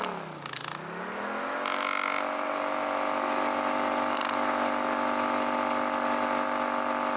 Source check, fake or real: real